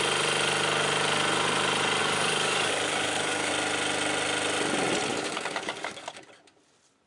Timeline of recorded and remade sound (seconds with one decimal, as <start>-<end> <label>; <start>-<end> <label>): 0.0-2.0 recorded; 2.0-3.5 remade; 3.5-5.1 recorded; 5.1-6.2 remade; 6.2-7.1 recorded